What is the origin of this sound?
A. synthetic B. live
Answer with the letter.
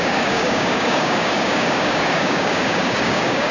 A